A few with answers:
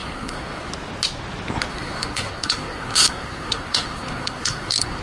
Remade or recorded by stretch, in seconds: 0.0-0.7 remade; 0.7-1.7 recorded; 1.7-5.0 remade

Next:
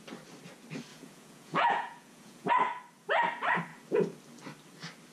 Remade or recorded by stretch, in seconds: 0.0-0.9 recorded; 0.9-2.5 remade; 2.5-5.1 recorded

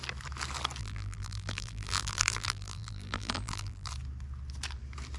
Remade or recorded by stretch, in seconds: 0.0-0.8 recorded; 0.8-3.9 remade; 3.9-5.2 recorded

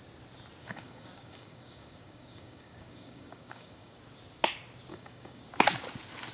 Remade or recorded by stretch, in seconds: 0.0-0.6 recorded; 0.6-4.0 remade; 4.0-4.9 recorded; 4.9-5.5 remade; 5.5-6.3 recorded